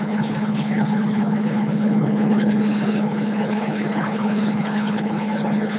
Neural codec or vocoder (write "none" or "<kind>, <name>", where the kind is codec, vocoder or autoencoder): codec, HILCodec